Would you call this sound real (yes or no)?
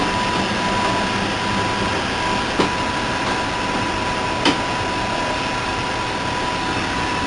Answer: yes